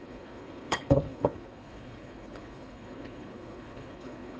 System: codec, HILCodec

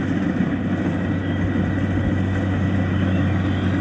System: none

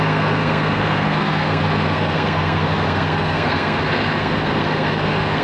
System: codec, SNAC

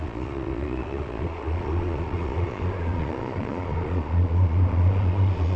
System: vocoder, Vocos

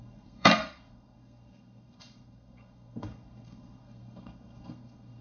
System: codec, SNAC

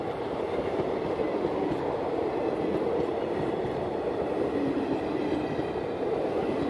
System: none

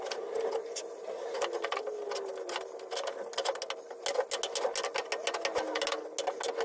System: none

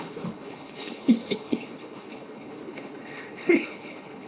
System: codec, HILCodec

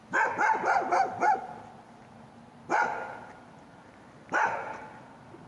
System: none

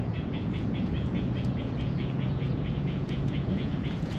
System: vocoder, Vocos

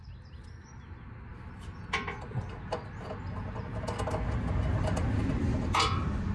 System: none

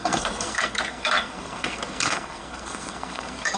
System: codec, SNAC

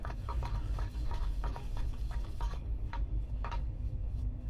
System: codec, DAC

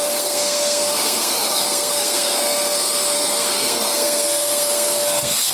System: codec, SNAC